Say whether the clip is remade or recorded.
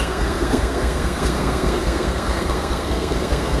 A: remade